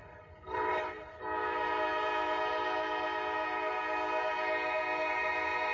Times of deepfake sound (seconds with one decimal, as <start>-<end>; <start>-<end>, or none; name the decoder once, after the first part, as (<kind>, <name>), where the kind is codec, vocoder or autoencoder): 0.0-1.2 (codec, HILCodec)